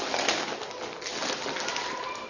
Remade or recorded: remade